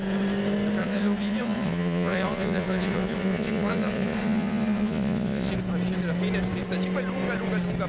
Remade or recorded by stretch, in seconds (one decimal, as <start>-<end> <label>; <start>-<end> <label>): 0.0-0.8 recorded; 0.8-5.5 remade; 5.5-7.9 recorded